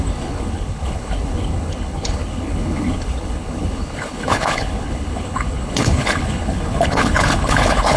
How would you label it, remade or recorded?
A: remade